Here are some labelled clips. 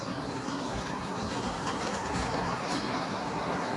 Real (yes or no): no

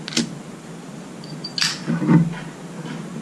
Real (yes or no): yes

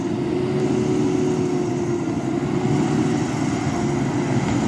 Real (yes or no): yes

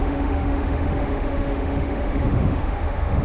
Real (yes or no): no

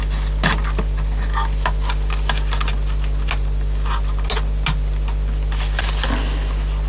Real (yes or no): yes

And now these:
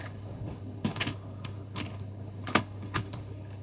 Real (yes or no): no